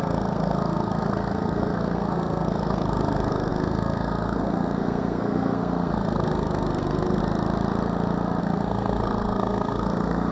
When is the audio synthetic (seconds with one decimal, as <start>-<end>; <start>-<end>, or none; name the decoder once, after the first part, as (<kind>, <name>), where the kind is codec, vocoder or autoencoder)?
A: 0.0-7.2 (codec, SNAC); 8.4-10.3